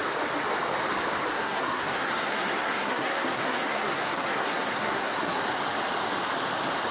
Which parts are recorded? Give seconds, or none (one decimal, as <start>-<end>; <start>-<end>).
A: 0.0-1.3; 5.4-6.9